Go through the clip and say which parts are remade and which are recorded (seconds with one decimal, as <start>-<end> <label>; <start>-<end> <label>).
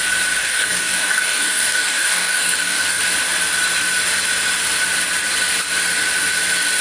0.0-0.4 recorded; 0.4-3.0 remade; 3.0-6.8 recorded